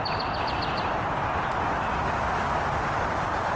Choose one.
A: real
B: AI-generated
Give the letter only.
A